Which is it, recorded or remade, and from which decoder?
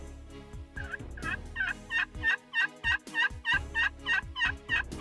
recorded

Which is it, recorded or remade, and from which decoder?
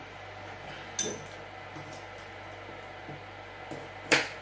recorded